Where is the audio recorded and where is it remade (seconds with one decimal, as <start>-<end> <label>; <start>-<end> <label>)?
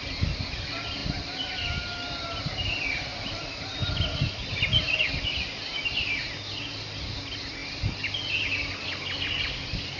0.0-3.1 recorded; 3.1-6.2 remade; 6.2-10.0 recorded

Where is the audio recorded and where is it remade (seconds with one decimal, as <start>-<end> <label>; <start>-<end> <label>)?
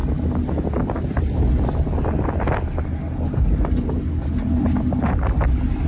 0.0-5.9 recorded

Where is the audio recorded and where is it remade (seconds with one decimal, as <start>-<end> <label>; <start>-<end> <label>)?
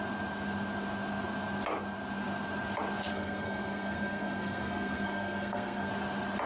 0.0-3.1 recorded; 3.1-5.9 remade; 5.9-6.5 recorded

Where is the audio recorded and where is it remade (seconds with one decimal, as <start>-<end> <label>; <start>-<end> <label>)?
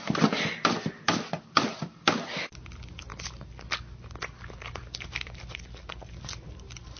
0.0-7.0 recorded